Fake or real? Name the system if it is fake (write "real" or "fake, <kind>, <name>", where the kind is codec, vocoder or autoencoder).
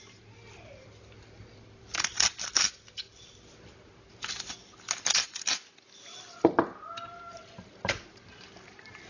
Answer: real